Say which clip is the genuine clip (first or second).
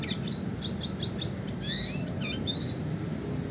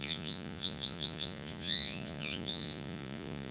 first